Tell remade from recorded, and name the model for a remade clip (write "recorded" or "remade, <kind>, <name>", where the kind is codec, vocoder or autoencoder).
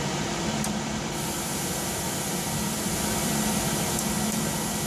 remade, vocoder, BigVGAN v2